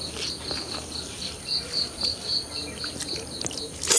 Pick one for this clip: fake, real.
real